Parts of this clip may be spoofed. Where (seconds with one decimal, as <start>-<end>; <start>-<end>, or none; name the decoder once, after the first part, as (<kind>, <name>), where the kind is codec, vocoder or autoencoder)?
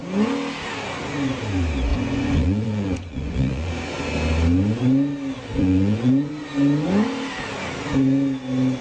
1.9-3.7 (vocoder, Vocos); 5.5-6.3